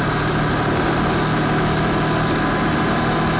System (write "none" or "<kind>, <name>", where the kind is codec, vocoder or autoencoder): none